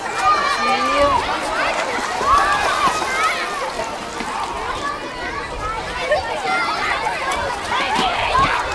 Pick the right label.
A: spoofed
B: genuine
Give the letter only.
B